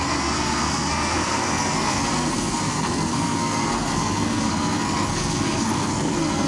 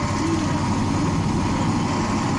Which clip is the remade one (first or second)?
first